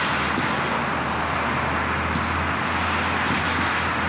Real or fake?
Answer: real